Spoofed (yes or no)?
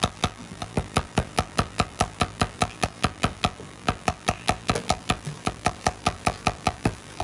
yes